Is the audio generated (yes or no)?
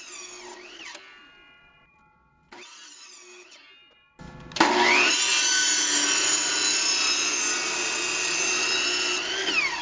no